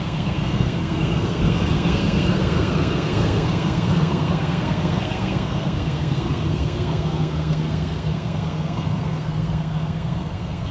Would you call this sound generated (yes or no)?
yes